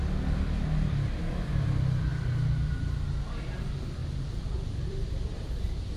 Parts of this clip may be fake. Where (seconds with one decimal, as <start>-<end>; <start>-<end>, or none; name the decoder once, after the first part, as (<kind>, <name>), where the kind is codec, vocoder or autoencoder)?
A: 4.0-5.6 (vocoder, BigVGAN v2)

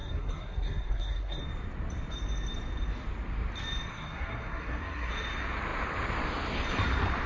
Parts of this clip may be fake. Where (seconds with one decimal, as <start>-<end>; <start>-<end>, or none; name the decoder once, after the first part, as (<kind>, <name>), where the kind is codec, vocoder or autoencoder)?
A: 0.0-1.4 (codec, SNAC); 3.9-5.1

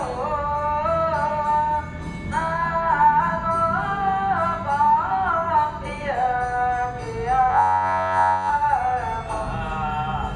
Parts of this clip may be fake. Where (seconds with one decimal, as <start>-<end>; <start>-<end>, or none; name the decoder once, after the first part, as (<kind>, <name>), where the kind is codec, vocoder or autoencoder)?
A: 7.5-8.5 (vocoder, Vocos)

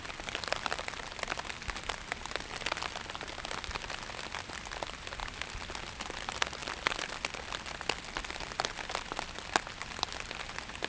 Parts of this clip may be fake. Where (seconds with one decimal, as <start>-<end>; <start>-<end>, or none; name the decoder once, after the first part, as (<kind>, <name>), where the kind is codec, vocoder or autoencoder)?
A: none